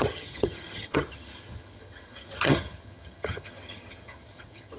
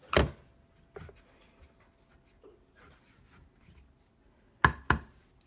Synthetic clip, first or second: first